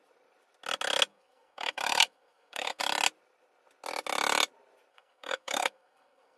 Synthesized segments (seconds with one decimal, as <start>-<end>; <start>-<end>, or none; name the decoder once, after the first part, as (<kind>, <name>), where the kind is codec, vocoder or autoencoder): 1.1-2.8 (codec, SNAC); 4.9-6.4